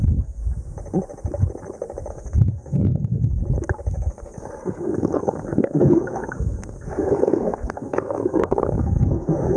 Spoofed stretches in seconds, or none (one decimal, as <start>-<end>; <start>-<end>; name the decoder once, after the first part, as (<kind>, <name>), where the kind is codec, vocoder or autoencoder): 0.0-0.4 (codec, SNAC); 2.1-3.4; 3.9-9.6